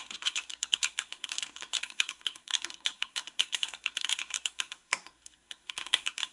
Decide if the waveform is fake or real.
fake